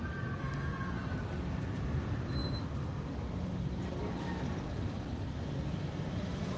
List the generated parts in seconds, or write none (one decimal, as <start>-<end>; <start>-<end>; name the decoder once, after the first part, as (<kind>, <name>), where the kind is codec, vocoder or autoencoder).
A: none